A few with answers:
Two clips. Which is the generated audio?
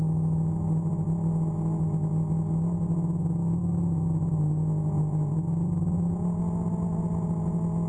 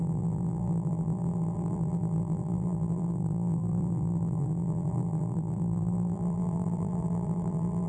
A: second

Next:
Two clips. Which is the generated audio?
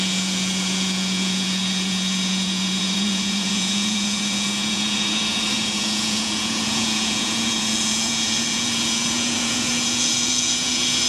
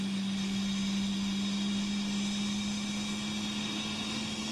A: first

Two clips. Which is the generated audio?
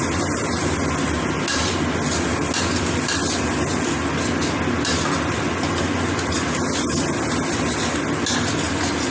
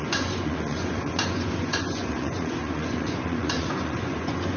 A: second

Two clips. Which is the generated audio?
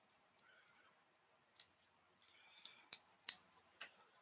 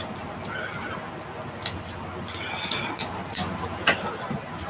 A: first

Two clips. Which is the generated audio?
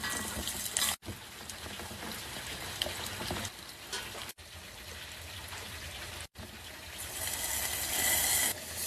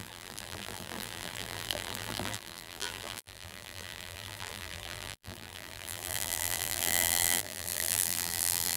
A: second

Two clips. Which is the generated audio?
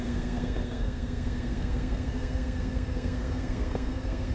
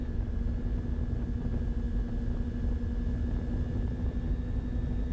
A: first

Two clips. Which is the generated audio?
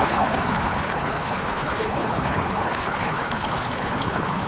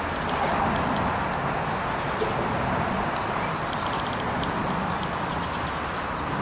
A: first